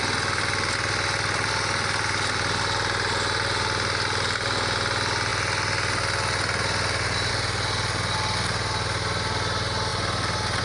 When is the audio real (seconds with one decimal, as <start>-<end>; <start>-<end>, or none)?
0.0-10.6